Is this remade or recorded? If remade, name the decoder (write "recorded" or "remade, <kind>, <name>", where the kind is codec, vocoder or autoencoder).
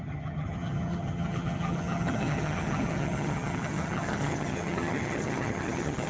remade, vocoder, HiFi-GAN